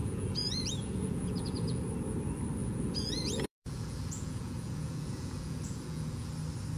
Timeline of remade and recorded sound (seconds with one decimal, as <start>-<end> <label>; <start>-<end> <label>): 0.0-1.8 remade; 1.8-2.6 recorded; 2.6-6.3 remade; 6.3-6.8 recorded